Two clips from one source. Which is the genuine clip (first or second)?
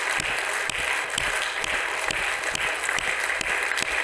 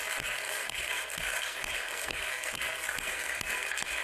first